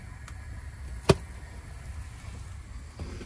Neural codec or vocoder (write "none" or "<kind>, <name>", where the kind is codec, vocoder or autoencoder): none